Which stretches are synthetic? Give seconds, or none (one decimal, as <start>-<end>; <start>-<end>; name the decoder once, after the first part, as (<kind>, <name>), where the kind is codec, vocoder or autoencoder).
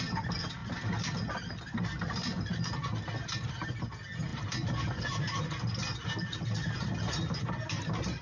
none